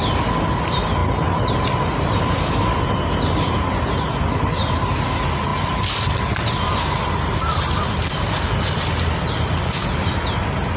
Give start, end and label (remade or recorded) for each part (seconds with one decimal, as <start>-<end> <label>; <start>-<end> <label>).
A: 0.0-10.8 recorded